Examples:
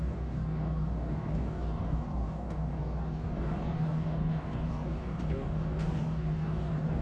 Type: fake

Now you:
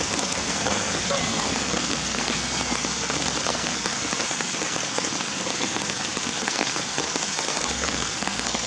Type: fake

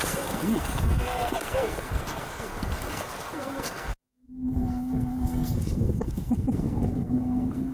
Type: fake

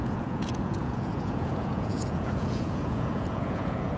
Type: fake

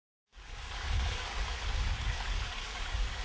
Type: fake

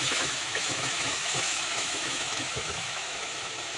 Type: fake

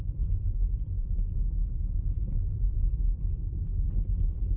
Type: fake